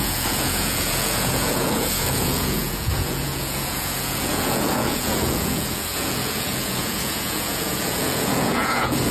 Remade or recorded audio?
remade